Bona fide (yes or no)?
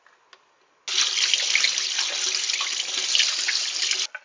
yes